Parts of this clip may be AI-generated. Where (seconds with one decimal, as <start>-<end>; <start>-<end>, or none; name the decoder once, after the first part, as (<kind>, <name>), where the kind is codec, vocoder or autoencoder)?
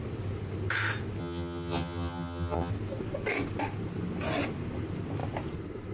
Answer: 1.2-2.7 (vocoder, HiFi-GAN)